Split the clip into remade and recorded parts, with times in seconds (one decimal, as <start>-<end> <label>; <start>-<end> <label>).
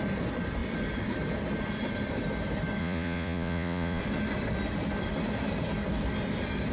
0.0-2.8 recorded; 2.8-4.0 remade; 4.0-6.7 recorded